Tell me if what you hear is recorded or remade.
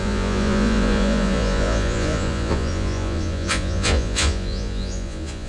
remade